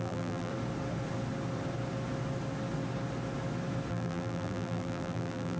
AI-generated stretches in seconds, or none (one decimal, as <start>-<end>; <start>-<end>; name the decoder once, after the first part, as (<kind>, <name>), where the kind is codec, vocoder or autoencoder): 0.0-0.5 (vocoder, BigVGAN v2); 3.9-5.6